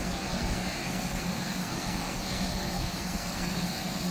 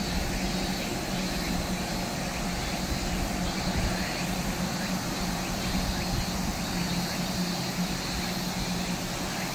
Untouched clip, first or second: second